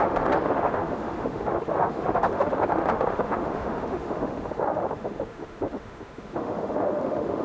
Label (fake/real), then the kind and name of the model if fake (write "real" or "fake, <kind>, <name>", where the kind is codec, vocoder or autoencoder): fake, autoencoder, DAC-VAE